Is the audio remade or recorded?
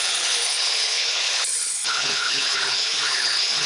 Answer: remade